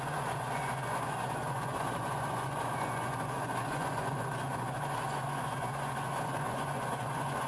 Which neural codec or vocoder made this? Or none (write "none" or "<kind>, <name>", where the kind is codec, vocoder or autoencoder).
vocoder, Vocos